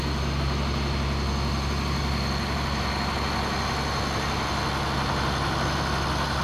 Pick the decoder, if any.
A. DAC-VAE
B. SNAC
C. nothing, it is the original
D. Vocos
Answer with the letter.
C